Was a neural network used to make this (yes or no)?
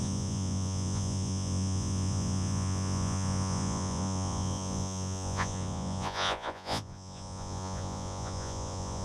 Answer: yes